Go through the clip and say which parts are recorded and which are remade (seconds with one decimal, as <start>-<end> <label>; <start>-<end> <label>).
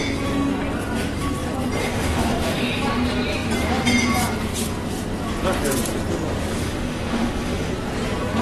0.0-1.8 recorded; 1.8-2.8 remade; 2.8-6.6 recorded; 6.6-7.7 remade; 7.7-8.4 recorded